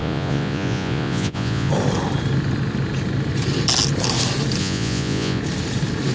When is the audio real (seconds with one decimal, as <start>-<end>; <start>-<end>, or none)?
1.7-4.6; 5.4-6.1